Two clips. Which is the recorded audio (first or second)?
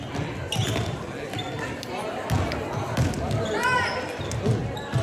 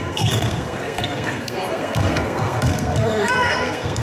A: first